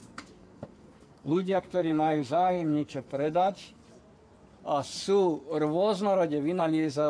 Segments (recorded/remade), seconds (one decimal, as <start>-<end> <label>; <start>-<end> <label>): 0.0-3.8 remade; 3.8-6.6 recorded; 6.6-7.1 remade